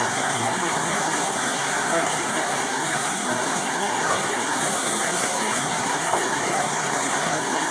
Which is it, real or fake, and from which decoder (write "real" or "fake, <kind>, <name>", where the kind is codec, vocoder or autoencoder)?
fake, codec, SNAC